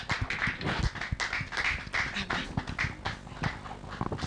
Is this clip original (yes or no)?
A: yes